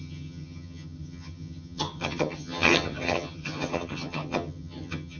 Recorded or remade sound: remade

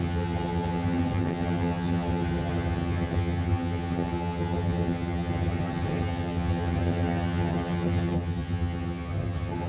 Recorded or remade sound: remade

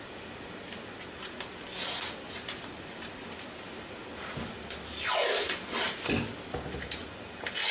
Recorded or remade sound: recorded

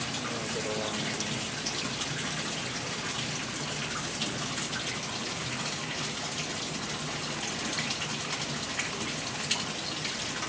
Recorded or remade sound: recorded